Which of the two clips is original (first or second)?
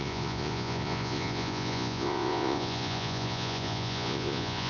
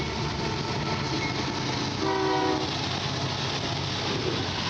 second